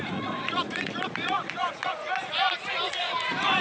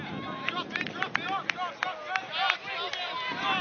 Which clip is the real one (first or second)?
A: second